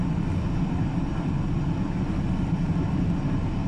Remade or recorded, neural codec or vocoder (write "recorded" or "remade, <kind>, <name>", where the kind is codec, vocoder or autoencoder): recorded